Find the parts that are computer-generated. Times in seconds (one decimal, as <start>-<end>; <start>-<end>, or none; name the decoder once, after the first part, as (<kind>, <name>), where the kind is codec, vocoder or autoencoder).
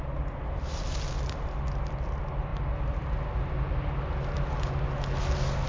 none